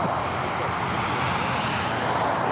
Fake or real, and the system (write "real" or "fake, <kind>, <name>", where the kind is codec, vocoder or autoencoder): real